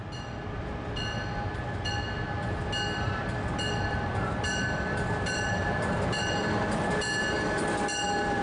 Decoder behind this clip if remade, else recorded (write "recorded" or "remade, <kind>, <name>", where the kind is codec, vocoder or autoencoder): recorded